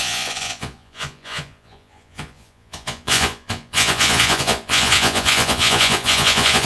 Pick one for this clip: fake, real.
fake